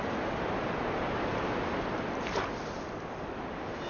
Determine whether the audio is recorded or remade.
recorded